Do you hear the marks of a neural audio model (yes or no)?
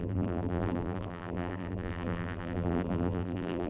yes